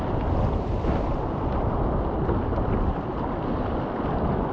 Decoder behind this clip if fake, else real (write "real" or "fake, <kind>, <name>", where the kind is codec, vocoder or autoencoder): real